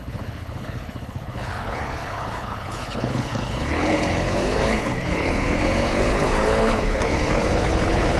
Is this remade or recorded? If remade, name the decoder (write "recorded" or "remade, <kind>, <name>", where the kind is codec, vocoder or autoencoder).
remade, codec, HILCodec